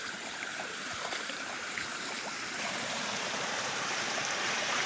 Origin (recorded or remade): remade